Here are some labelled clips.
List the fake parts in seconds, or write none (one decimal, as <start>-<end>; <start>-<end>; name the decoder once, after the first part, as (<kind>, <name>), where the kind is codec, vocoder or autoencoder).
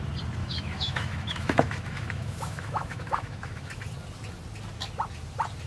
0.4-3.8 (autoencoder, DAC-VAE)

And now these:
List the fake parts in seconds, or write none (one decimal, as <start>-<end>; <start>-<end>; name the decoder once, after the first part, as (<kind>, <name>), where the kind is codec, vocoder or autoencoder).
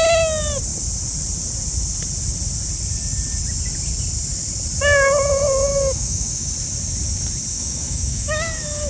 5.7-6.5 (autoencoder, DAC-VAE); 7.5-8.9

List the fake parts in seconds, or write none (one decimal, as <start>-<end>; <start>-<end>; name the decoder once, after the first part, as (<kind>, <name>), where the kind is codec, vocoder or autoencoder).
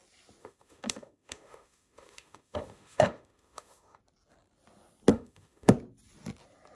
0.4-4.0 (autoencoder, DAC-VAE); 5.1-5.7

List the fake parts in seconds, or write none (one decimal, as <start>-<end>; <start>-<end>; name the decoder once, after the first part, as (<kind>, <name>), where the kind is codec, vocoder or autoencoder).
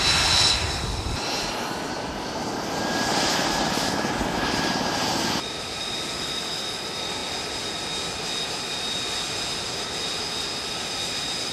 none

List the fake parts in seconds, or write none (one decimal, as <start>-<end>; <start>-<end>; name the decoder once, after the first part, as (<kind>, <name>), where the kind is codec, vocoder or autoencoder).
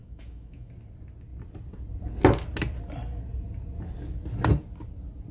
0.0-0.7 (autoencoder, DAC-VAE)